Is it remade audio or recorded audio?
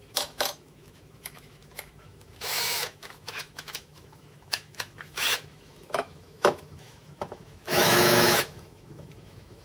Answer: remade